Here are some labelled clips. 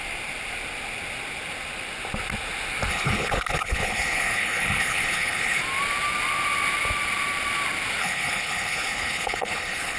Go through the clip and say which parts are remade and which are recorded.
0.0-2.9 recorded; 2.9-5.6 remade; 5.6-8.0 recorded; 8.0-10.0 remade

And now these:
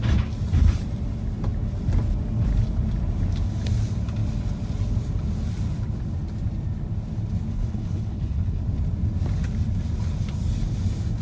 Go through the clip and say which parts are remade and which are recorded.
0.0-7.5 recorded; 7.5-8.6 remade; 8.6-11.2 recorded

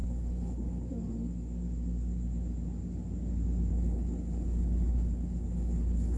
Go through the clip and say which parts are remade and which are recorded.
0.0-0.9 remade; 0.9-3.7 recorded; 3.7-6.2 remade

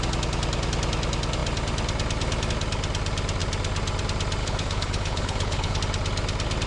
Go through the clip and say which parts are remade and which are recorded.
0.0-4.4 recorded; 4.4-5.8 remade; 5.8-6.7 recorded

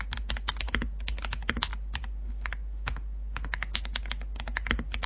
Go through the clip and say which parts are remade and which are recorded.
0.0-5.1 recorded

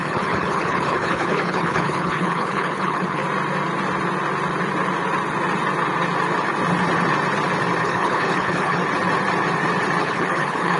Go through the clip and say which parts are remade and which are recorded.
0.0-3.2 remade; 3.2-7.8 recorded; 7.8-8.8 remade; 8.8-10.0 recorded; 10.0-10.8 remade

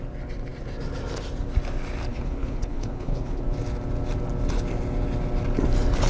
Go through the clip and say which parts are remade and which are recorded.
0.0-2.1 recorded; 2.1-3.4 remade; 3.4-6.1 recorded